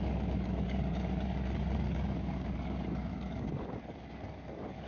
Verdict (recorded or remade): remade